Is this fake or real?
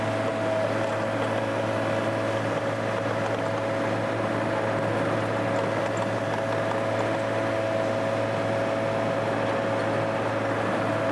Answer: real